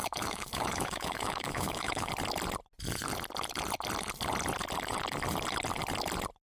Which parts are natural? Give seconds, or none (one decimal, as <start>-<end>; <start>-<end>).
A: 2.1-6.4